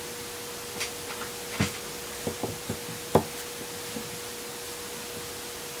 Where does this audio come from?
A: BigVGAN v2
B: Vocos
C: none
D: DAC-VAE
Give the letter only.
C